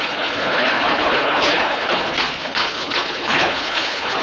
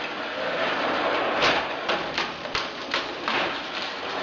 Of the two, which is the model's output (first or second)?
first